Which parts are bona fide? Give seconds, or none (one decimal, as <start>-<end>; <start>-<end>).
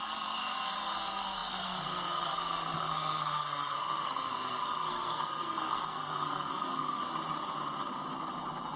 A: 7.0-8.8